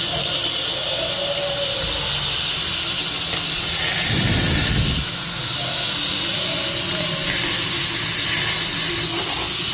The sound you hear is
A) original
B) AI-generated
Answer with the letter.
A